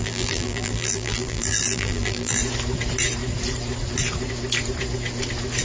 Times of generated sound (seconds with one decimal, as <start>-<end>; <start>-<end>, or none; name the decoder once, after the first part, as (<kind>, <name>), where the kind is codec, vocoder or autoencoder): 0.0-2.4 (vocoder, BigVGAN v2)